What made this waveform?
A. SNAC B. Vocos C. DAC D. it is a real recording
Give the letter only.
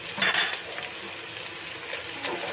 D